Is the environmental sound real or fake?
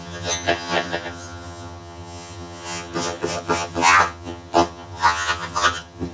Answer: fake